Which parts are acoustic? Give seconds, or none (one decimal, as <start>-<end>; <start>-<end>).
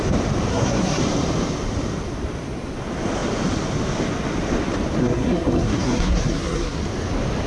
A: 0.0-0.5; 1.0-5.0; 6.8-7.5